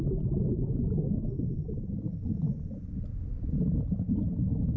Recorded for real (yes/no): yes